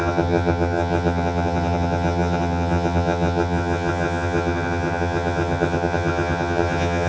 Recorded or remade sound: remade